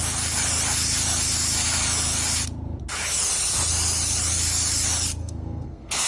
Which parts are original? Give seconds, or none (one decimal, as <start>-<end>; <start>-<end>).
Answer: 0.0-5.2